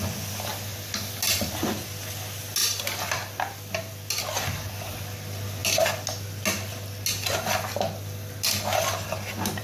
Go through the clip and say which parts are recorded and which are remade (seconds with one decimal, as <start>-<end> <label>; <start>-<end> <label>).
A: 0.0-9.6 recorded